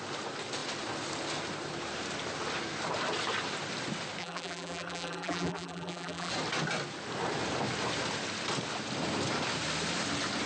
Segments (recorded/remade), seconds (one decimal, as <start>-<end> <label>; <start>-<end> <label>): 0.0-4.2 recorded; 4.2-6.3 remade; 6.3-10.5 recorded